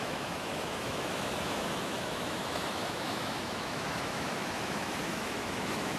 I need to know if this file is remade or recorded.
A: remade